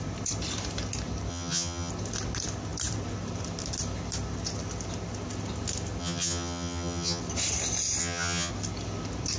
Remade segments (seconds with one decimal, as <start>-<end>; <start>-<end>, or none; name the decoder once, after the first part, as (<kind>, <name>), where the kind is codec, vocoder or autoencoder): 1.3-1.9 (vocoder, HiFi-GAN); 6.0-7.2; 8.0-8.5

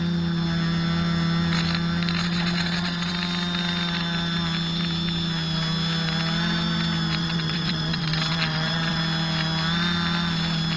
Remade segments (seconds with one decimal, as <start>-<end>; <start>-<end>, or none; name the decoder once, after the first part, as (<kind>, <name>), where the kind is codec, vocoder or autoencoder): 2.2-3.1 (vocoder, WaveNeXt); 7.2-9.0

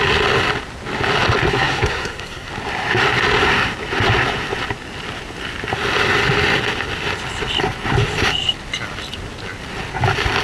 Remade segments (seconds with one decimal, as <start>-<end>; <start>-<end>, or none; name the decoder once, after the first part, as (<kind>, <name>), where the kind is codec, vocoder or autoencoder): 1.5-2.5 (codec, SNAC)

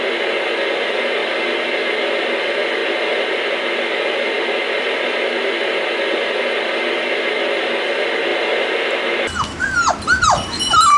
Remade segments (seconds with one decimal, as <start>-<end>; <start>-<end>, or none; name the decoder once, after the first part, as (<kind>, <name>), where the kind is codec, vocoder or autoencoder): 0.0-1.2 (vocoder, BigVGAN v2); 2.2-2.8; 4.8-8.3

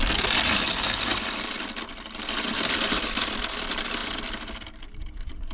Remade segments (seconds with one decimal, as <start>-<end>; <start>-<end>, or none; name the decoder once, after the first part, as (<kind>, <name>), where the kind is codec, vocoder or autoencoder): none

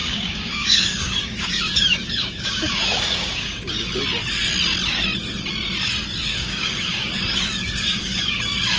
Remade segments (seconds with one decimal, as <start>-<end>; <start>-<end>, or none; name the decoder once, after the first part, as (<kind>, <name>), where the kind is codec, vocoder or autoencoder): 0.0-4.0 (codec, DAC); 6.3-8.8